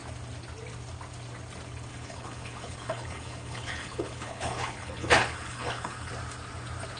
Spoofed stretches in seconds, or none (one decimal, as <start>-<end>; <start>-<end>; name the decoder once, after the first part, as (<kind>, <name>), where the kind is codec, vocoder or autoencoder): 1.9-6.1 (codec, HILCodec)